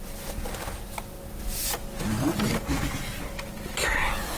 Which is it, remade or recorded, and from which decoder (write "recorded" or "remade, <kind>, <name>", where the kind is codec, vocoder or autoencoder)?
recorded